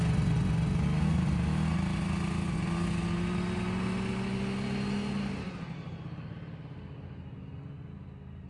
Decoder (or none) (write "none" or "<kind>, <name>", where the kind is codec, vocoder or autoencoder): none